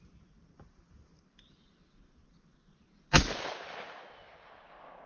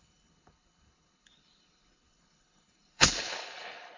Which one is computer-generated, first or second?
second